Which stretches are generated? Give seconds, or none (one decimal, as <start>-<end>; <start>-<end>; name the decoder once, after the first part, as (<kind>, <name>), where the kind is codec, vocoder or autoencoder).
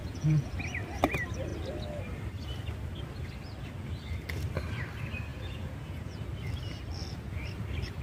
0.0-0.5 (vocoder, Vocos); 5.3-6.2